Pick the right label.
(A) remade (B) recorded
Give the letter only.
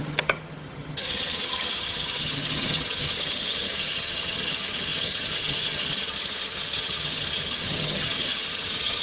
A